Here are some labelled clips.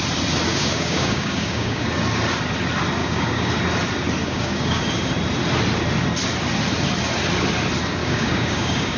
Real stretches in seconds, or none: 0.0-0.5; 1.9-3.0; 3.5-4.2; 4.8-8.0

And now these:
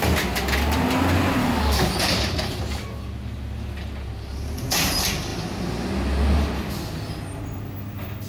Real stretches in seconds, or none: 0.0-1.4; 1.9-8.3

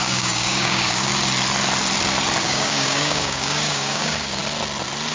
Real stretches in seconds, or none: 1.1-2.4; 4.4-5.1

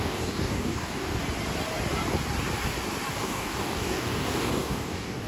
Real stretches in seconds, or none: 1.2-3.1

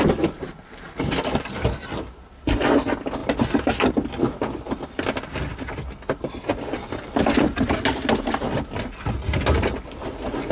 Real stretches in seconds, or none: 0.0-10.5

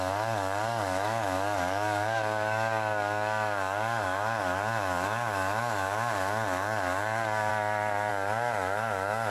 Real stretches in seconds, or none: 7.5-8.1